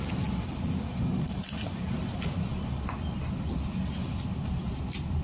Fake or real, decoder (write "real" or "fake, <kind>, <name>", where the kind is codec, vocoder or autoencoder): real